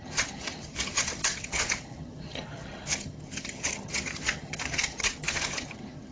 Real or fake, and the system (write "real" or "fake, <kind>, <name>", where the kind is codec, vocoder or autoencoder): fake, vocoder, HiFi-GAN